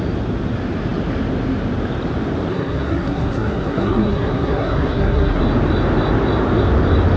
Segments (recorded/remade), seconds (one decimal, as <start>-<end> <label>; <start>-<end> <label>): 0.0-2.5 recorded; 2.5-5.4 remade; 5.4-7.2 recorded